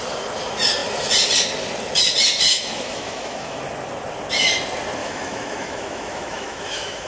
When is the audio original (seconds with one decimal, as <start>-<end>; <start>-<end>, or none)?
0.0-2.5; 3.6-5.0